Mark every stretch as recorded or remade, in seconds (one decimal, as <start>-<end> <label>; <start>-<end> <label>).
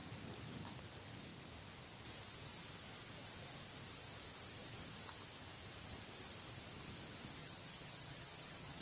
0.0-7.4 recorded; 7.4-8.8 remade